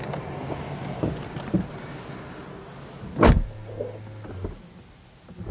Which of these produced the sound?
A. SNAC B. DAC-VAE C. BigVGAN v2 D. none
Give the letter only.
D